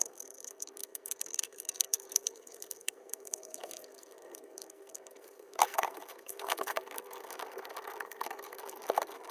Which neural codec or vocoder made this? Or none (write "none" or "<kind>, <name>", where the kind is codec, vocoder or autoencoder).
codec, SNAC